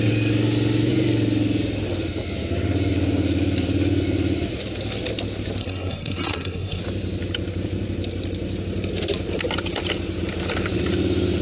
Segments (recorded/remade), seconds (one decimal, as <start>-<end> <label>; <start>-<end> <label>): 0.0-5.6 recorded; 5.6-6.8 remade; 6.8-11.4 recorded